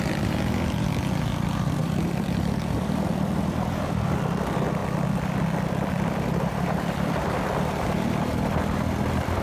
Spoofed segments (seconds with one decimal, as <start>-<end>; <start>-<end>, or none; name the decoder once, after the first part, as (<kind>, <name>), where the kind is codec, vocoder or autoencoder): 0.0-4.8 (vocoder, BigVGAN v2); 5.9-9.4